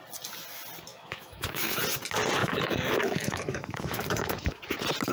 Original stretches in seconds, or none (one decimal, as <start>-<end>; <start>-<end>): 0.0-0.9; 1.8-2.4; 4.6-5.1